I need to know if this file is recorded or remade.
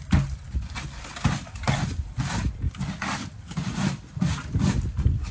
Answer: recorded